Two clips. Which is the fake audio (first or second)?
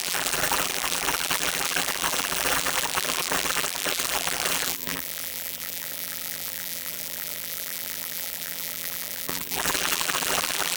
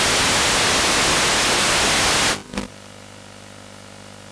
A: first